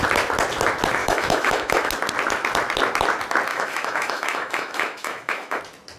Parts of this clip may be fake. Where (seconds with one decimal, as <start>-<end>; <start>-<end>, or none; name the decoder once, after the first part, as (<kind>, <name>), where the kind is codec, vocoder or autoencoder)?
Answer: 1.0-1.9 (autoencoder, DAC-VAE); 3.5-5.6